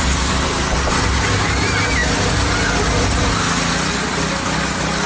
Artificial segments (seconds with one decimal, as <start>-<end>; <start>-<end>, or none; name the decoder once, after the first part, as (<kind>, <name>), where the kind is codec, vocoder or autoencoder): none